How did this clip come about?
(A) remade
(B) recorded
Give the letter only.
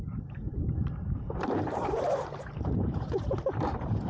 A